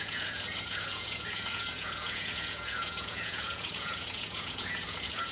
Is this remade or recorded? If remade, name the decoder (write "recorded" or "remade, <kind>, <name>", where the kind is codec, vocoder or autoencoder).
remade, vocoder, Vocos